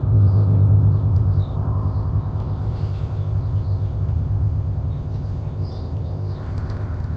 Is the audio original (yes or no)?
no